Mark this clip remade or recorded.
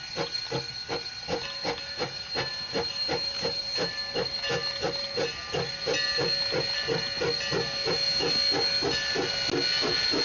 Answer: recorded